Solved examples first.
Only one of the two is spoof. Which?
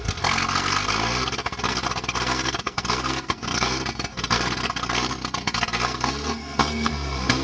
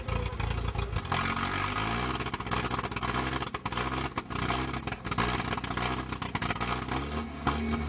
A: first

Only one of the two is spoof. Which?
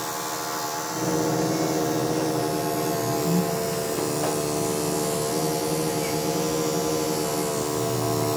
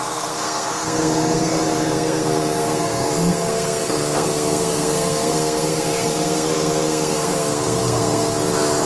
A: second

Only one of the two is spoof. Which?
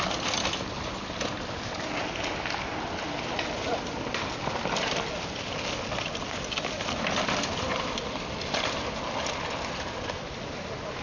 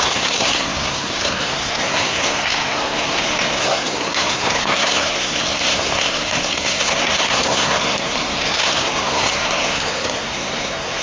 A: second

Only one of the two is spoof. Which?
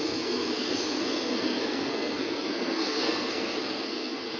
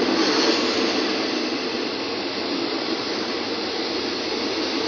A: first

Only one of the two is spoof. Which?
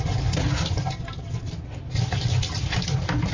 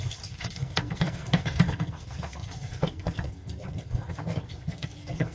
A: second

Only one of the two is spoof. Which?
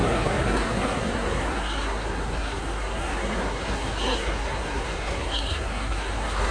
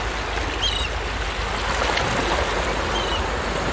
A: first